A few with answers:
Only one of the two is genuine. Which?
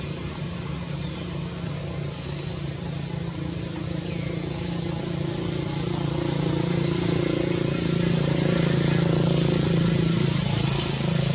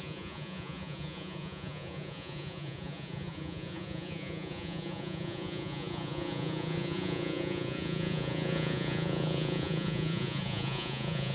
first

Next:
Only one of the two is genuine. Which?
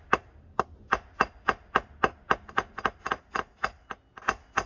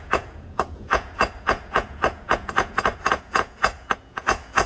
first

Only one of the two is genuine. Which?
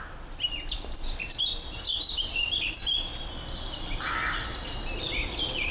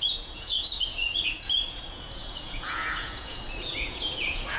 first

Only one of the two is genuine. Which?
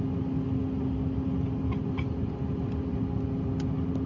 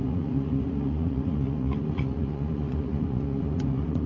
first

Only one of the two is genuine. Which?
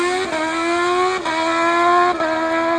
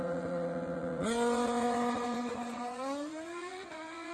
first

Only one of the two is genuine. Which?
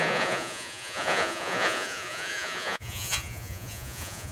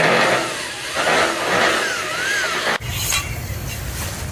second